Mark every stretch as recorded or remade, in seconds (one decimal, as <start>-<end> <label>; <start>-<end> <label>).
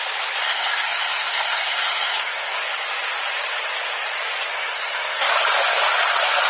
0.0-0.4 recorded; 0.4-2.6 remade; 2.6-4.5 recorded; 4.5-5.3 remade; 5.3-6.5 recorded